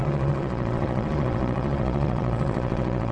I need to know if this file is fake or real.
fake